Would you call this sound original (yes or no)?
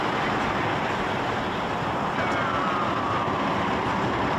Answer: yes